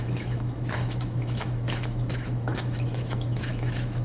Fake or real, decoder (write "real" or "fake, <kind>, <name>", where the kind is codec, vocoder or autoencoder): fake, autoencoder, DAC-VAE